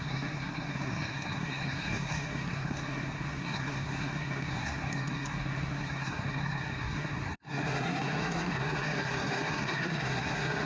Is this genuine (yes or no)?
no